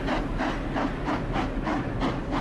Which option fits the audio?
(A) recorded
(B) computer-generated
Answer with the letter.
A